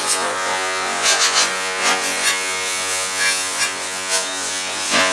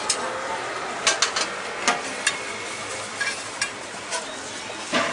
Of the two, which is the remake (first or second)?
first